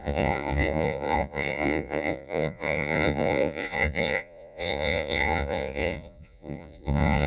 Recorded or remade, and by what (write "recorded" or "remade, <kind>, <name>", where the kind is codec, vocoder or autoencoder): remade, vocoder, Vocos